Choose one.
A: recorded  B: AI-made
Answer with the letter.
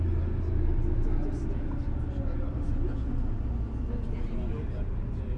A